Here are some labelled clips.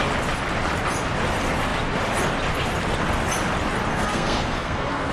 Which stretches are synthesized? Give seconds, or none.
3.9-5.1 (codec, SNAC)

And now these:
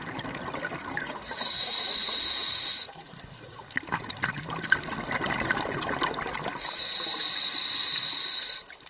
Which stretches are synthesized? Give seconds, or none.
1.0-3.6 (vocoder, Vocos)

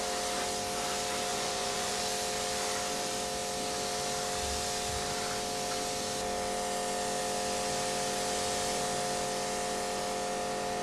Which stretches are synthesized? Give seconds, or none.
1.3-2.0 (vocoder, Vocos)

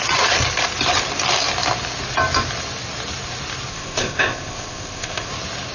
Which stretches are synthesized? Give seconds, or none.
3.7-5.3 (codec, ZipCodec)

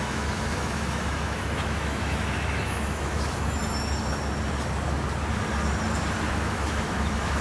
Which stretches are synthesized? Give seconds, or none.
0.0-3.6 (autoencoder, DAC-VAE); 6.3-7.4

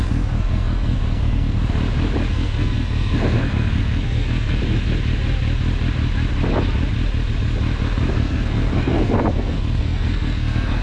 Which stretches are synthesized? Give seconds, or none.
0.0-1.6 (codec, SNAC); 2.3-4.6; 8.1-10.8

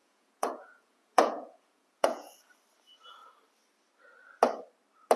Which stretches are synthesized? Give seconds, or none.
0.0-2.3 (vocoder, Vocos)

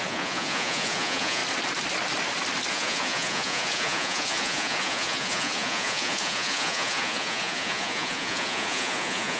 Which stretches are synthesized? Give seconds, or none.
0.0-1.4 (vocoder, Vocos); 2.7-9.4